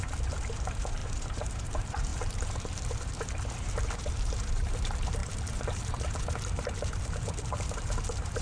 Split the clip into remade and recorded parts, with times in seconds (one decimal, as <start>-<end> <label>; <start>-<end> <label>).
0.0-8.4 remade